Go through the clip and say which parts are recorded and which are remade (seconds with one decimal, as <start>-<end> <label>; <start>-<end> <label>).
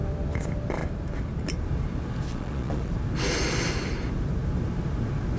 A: 0.0-2.3 recorded; 2.3-2.9 remade; 2.9-5.4 recorded